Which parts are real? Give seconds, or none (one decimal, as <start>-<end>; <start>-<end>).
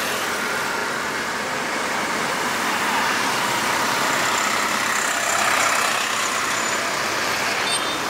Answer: 0.0-0.8; 4.7-8.1